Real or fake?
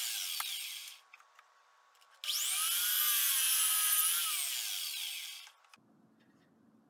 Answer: real